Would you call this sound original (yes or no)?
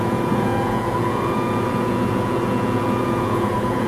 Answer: no